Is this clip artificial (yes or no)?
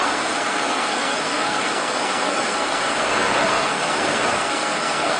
yes